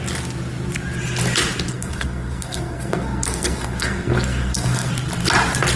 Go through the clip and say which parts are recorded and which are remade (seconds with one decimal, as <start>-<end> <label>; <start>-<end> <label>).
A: 0.0-1.7 recorded; 1.7-4.9 remade; 4.9-5.8 recorded